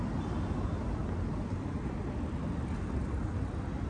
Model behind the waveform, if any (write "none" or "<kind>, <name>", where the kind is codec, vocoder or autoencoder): none